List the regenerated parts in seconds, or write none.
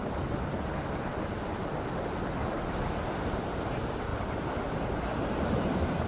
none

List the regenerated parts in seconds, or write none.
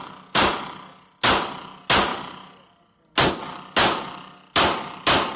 none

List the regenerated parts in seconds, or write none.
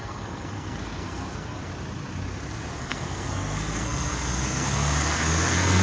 0.0-1.7; 2.8-5.8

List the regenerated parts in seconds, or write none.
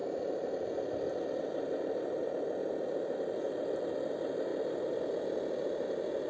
none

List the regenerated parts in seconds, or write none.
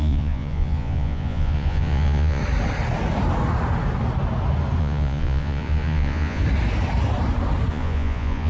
0.0-2.4; 4.8-6.4; 7.7-8.5